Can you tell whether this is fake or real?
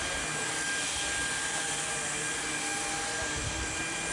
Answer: real